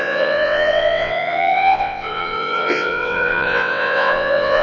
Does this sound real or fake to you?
fake